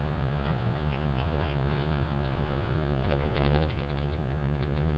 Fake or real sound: fake